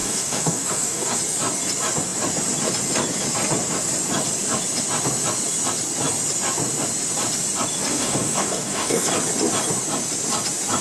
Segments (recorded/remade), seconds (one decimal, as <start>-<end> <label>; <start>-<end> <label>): 0.0-1.2 remade; 1.2-7.9 recorded; 7.9-9.1 remade; 9.1-10.8 recorded